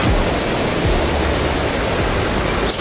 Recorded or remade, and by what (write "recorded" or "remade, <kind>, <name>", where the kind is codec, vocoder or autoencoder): recorded